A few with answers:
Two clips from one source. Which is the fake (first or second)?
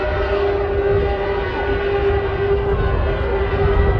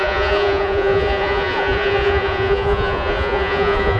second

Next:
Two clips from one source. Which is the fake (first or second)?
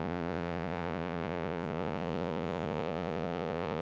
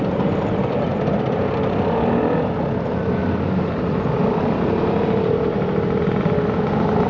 first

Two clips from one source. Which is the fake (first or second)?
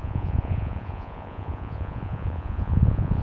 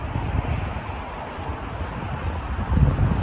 first